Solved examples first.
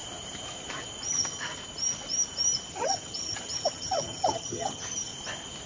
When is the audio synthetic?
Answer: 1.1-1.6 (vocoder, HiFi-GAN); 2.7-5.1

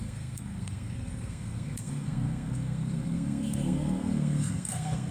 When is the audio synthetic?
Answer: 0.0-5.1 (codec, SNAC)

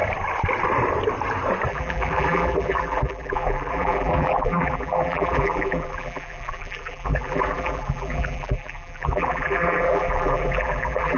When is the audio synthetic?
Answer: 1.7-11.2 (vocoder, BigVGAN v2)